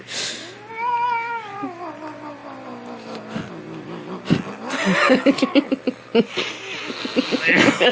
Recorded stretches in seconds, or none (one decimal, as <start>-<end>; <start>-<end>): 0.0-7.9